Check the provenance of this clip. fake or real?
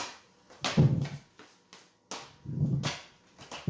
real